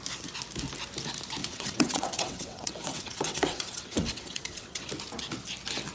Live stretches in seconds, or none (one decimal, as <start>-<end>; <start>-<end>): 0.0-1.4; 4.9-5.9